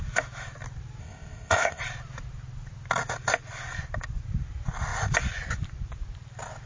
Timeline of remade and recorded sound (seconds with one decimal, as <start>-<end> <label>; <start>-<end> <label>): 0.0-1.0 recorded; 1.0-1.8 remade; 1.8-6.7 recorded